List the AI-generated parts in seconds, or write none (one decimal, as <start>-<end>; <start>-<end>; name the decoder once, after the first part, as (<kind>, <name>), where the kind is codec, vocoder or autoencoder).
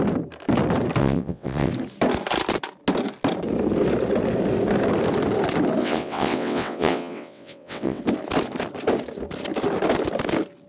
1.0-1.7 (vocoder, WaveNeXt); 5.8-8.0